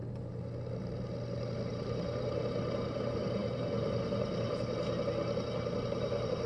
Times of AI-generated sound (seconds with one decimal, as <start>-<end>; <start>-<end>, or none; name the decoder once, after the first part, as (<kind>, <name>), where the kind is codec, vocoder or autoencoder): none